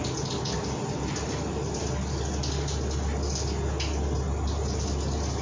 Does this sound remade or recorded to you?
recorded